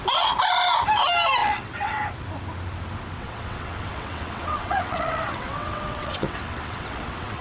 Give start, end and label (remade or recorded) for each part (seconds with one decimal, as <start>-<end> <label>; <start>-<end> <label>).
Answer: 0.0-1.4 recorded; 1.4-2.0 remade; 2.0-3.2 recorded; 3.2-7.4 remade